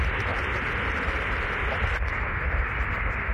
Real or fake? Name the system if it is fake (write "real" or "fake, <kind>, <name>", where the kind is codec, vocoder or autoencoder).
real